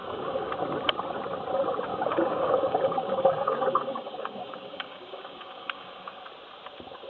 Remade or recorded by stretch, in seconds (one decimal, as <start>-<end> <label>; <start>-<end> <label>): 0.0-0.5 remade; 0.5-1.9 recorded; 1.9-6.2 remade; 6.2-7.1 recorded